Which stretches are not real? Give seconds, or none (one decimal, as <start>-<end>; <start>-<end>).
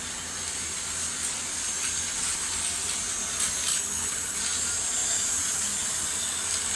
3.7-4.4